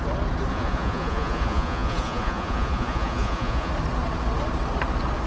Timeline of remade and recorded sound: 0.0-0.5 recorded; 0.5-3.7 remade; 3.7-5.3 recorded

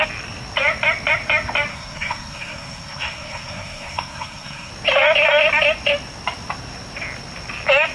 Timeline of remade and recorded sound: 0.0-1.7 recorded; 1.7-4.7 remade; 4.7-7.9 recorded

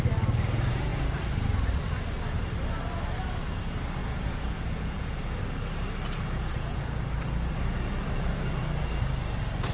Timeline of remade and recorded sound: 0.0-4.0 recorded; 4.0-5.2 remade; 5.2-6.5 recorded; 6.5-7.0 remade; 7.0-9.7 recorded

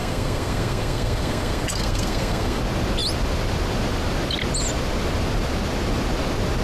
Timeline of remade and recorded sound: 0.0-2.6 remade; 2.6-6.6 recorded

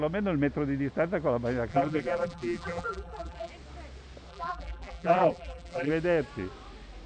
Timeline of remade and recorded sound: 0.0-1.7 recorded; 1.7-3.5 remade; 3.5-4.3 recorded; 4.3-5.9 remade; 5.9-7.1 recorded

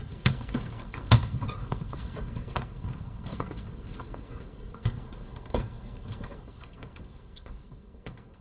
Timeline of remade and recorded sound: 0.0-8.4 remade

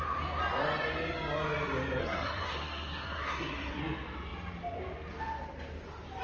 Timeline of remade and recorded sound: 0.0-2.0 recorded; 2.0-3.8 remade; 3.8-6.2 recorded

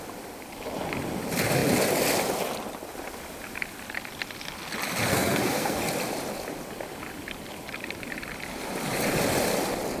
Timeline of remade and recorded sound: 0.0-5.1 recorded; 5.1-5.8 remade; 5.8-10.0 recorded